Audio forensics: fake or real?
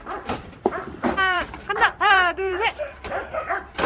fake